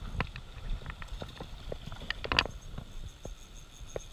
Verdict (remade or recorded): recorded